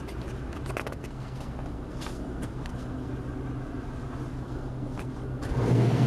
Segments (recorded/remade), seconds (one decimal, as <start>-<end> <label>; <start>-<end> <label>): 0.0-0.8 recorded; 0.8-3.1 remade; 3.1-4.3 recorded; 4.3-6.1 remade